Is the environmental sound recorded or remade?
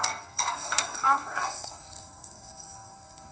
remade